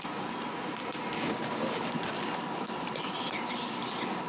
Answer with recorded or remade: recorded